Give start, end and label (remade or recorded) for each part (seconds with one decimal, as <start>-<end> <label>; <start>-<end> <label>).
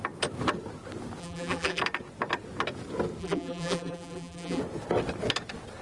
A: 0.0-1.2 recorded; 1.2-1.8 remade; 1.8-3.2 recorded; 3.2-4.6 remade; 4.6-5.8 recorded